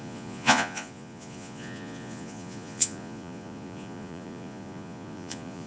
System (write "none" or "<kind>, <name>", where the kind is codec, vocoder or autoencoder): vocoder, Vocos